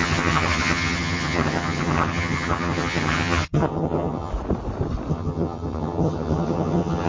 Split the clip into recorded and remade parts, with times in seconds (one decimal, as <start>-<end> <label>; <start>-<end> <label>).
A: 0.0-4.3 remade; 4.3-5.1 recorded; 5.1-7.1 remade

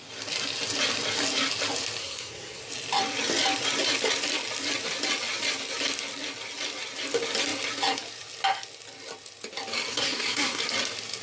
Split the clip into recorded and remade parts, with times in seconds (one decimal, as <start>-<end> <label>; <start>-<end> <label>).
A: 0.0-2.0 recorded; 2.0-2.6 remade; 2.6-9.9 recorded; 9.9-10.6 remade; 10.6-11.2 recorded

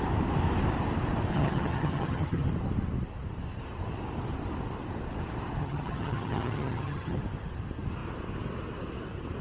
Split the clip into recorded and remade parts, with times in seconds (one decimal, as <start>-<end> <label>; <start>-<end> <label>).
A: 0.0-1.3 recorded; 1.3-2.5 remade; 2.5-5.6 recorded; 5.6-7.2 remade; 7.2-9.4 recorded

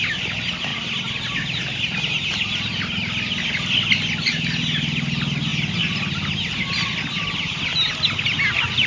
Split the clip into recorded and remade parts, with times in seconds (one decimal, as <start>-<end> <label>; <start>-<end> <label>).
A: 0.0-8.9 recorded

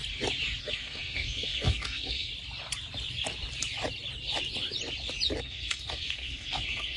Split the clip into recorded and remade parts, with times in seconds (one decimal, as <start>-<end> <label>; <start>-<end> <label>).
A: 0.0-0.6 recorded; 0.6-2.3 remade; 2.3-5.4 recorded; 5.4-7.0 remade

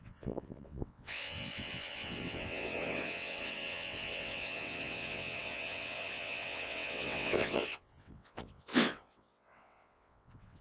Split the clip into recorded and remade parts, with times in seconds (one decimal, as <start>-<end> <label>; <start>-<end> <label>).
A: 0.0-10.6 remade

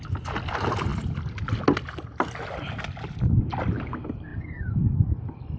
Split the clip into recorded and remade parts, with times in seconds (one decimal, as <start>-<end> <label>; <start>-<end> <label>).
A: 0.0-5.6 recorded

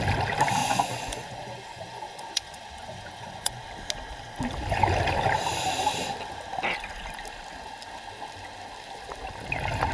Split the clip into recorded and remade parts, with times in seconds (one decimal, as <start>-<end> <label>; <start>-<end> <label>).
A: 0.0-0.6 recorded; 0.6-3.6 remade; 3.6-9.9 recorded